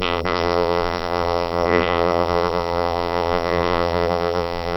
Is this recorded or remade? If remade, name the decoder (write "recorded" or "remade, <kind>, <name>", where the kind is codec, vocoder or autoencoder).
remade, vocoder, BigVGAN v2